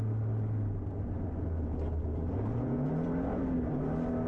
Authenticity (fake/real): real